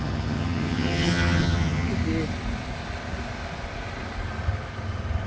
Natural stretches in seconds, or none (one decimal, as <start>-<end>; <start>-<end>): 1.9-5.3